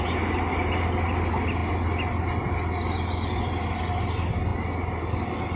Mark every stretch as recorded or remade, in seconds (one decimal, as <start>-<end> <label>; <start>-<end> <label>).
0.0-5.6 recorded